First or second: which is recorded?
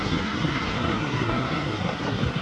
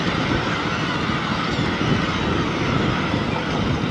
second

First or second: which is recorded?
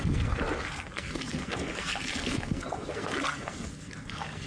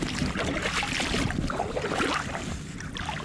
second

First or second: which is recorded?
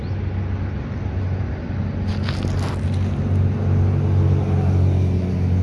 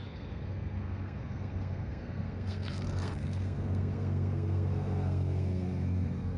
first